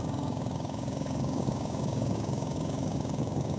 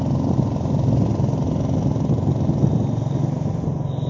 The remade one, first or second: first